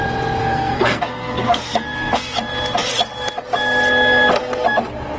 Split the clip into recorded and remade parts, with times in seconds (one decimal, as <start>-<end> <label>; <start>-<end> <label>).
0.0-0.4 recorded; 0.4-2.4 remade; 2.4-5.2 recorded